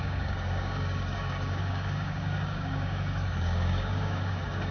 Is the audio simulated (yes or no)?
yes